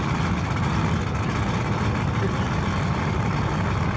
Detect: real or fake real